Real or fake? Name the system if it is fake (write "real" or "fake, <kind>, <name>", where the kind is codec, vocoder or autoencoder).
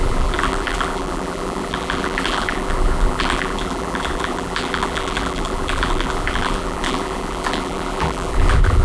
fake, vocoder, BigVGAN v2